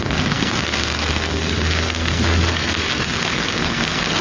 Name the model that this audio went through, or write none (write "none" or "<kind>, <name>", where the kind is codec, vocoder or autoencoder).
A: codec, SNAC